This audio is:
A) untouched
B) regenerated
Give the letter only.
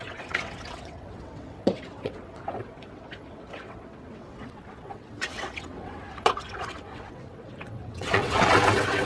B